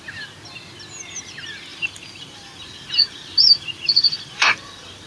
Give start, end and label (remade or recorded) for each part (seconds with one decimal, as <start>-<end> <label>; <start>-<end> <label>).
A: 0.0-1.7 recorded; 1.7-5.1 remade